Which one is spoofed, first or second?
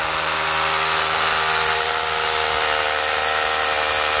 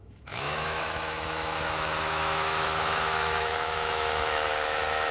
second